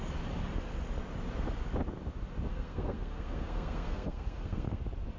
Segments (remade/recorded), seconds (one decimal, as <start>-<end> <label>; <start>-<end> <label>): 0.0-2.5 recorded; 2.5-4.8 remade; 4.8-5.2 recorded